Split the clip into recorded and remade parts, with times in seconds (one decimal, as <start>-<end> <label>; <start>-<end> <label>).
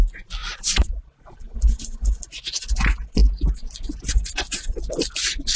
0.0-0.4 recorded; 0.4-1.4 remade; 1.4-5.6 recorded